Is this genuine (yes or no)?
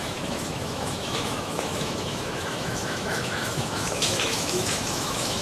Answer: no